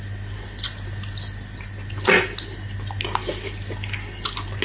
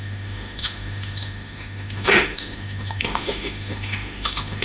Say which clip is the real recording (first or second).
first